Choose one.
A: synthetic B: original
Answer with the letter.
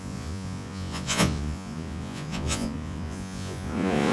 A